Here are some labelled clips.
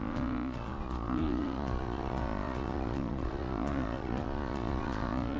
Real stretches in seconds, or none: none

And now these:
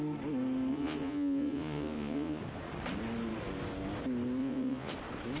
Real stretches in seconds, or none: 0.0-0.7; 2.4-4.4; 4.9-5.4